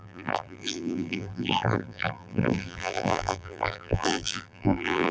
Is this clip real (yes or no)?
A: no